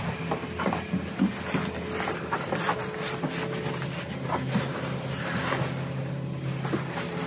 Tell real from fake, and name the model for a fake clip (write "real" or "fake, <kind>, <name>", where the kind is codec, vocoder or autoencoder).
real